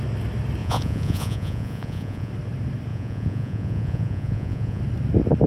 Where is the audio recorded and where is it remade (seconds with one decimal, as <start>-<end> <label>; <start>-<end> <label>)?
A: 0.0-0.6 recorded; 0.6-2.3 remade; 2.3-2.9 recorded; 2.9-4.8 remade; 4.8-5.5 recorded